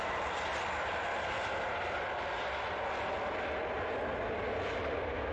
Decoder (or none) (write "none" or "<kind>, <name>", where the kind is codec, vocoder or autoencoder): none